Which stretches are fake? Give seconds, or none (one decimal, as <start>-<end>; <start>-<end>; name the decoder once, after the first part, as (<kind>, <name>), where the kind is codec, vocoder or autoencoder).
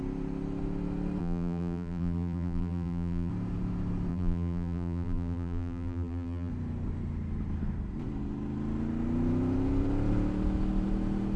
1.2-3.3 (vocoder, BigVGAN v2); 4.1-6.5